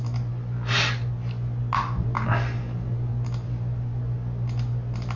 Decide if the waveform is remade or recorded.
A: recorded